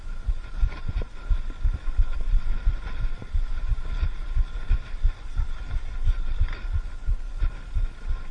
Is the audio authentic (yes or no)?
no